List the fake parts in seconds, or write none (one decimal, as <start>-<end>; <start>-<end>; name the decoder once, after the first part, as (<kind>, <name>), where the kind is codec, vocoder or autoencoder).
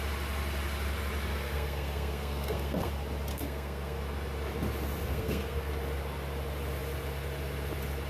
1.3-2.9 (codec, SNAC); 3.3-4.0; 5.1-5.7